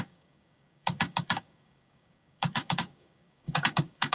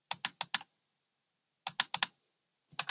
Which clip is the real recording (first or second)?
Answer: second